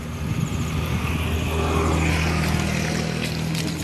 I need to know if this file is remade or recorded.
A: recorded